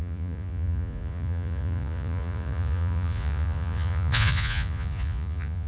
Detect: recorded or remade remade